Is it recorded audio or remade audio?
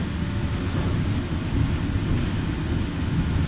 recorded